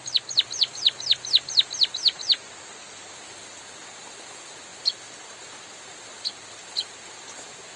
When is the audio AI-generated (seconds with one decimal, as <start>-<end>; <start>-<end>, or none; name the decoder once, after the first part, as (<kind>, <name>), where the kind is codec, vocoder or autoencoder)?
none